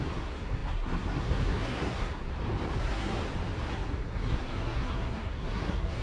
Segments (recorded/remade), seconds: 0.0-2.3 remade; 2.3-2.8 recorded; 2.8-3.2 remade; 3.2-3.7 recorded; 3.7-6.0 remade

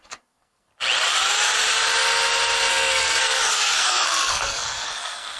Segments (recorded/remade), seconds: 0.0-0.7 remade; 0.7-2.7 recorded; 2.7-5.4 remade